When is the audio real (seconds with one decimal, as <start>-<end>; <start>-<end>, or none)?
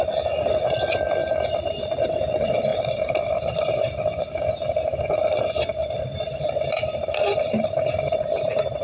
0.0-1.2; 2.1-5.8; 8.0-8.8